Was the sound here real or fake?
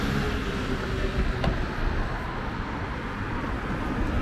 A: real